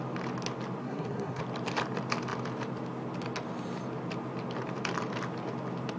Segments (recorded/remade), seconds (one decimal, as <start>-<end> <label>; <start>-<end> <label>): 0.0-0.8 recorded; 0.8-1.4 remade; 1.4-6.0 recorded